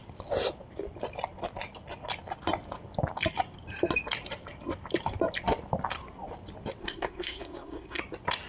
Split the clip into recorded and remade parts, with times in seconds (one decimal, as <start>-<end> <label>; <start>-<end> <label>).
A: 0.0-6.8 recorded; 6.8-8.0 remade; 8.0-8.5 recorded